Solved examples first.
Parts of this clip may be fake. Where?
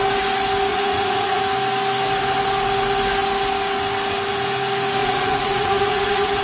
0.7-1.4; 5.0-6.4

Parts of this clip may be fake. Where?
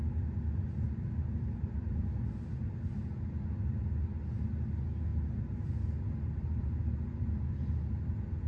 none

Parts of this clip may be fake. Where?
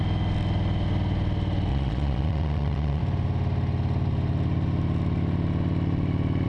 1.7-3.0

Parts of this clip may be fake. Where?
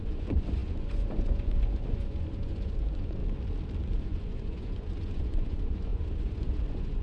0.0-3.2; 4.0-7.0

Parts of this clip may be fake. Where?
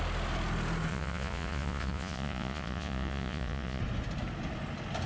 0.9-3.8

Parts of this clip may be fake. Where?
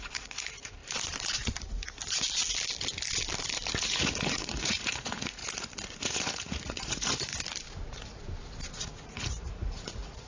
0.0-0.8; 3.8-5.4; 6.0-7.3; 8.8-10.3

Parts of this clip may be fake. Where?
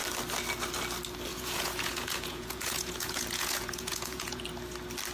1.3-4.4